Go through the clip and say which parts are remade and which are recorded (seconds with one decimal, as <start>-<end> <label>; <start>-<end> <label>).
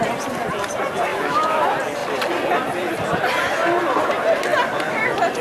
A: 0.0-1.1 recorded; 1.1-1.6 remade; 1.6-5.4 recorded